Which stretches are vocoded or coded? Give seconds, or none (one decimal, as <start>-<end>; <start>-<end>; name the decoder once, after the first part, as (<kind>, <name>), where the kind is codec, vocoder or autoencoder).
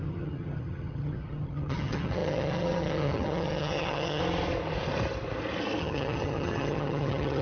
0.0-4.2 (vocoder, HiFi-GAN); 5.8-7.4